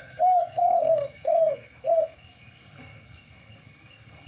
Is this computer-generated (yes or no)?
yes